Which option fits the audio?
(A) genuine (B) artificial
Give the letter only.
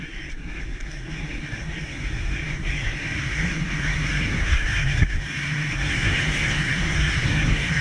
B